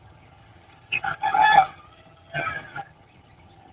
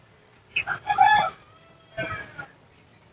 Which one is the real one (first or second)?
second